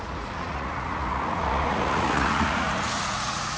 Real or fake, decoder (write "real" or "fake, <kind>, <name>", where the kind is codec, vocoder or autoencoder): fake, vocoder, Vocos